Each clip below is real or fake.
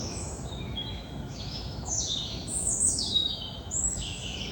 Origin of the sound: fake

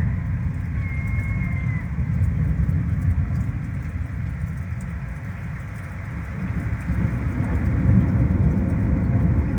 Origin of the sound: real